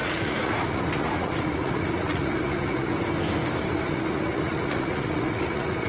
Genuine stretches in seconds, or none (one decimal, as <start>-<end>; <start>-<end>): 2.9-3.8